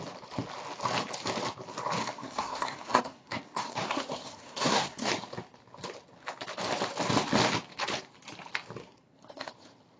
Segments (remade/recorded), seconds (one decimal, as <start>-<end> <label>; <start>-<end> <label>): 0.0-2.0 recorded; 2.0-5.1 remade; 5.1-8.8 recorded; 8.8-9.5 remade; 9.5-10.0 recorded